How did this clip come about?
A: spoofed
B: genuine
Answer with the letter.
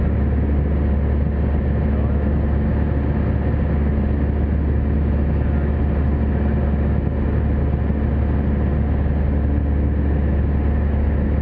B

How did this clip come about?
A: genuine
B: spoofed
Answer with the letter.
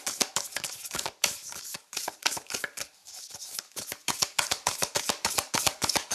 B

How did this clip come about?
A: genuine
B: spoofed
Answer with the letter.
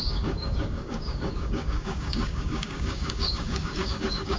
B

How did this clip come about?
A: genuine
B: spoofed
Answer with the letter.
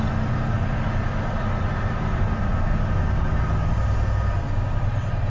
A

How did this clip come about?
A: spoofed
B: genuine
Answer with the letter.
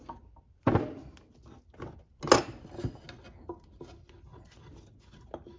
B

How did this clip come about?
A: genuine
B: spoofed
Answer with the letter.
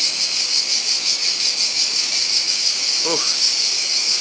B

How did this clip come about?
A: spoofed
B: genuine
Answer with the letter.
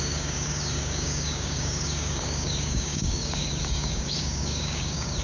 A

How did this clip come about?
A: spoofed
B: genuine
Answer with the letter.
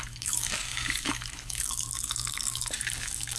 A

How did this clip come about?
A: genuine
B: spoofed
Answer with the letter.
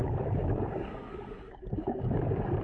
B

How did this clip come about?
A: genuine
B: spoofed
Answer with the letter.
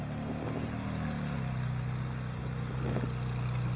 A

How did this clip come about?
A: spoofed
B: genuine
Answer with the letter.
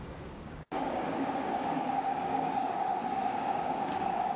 A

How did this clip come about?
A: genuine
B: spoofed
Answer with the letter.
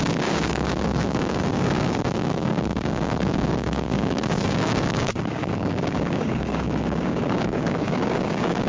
B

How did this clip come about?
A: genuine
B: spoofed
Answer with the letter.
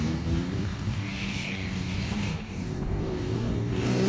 B